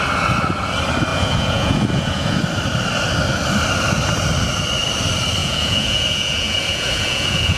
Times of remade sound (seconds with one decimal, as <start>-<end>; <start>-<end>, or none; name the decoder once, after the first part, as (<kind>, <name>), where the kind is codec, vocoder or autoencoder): 1.1-2.4 (vocoder, Vocos); 5.4-7.6